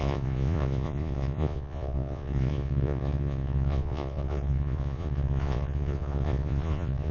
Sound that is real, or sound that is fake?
fake